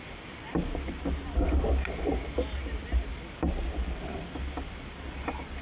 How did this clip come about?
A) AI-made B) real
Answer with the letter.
B